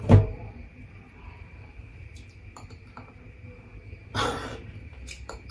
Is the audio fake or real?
fake